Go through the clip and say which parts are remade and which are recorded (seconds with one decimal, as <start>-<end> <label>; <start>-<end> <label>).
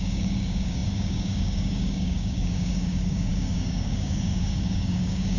0.0-5.4 remade